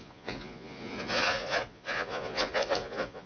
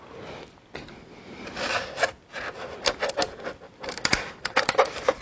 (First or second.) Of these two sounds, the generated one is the first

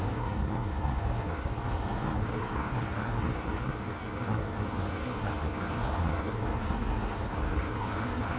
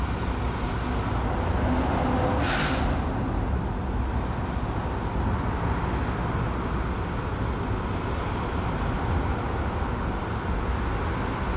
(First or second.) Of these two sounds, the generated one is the first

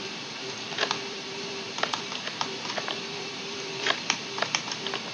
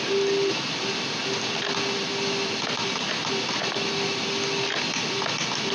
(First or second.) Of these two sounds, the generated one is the first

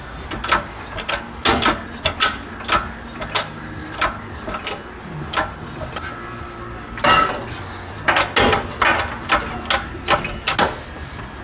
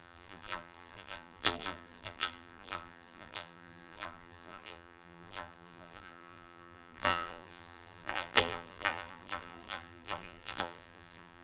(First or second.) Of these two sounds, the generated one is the second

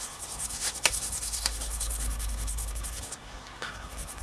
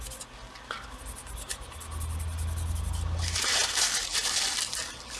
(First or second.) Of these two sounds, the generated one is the first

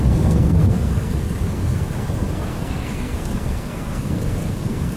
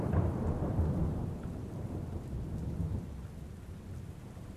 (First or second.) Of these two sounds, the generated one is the first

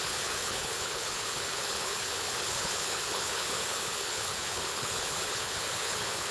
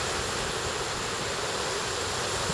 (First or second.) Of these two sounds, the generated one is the first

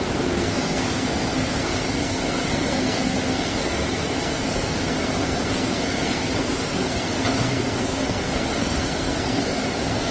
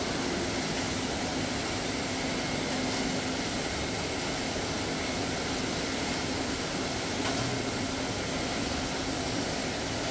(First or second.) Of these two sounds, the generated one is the first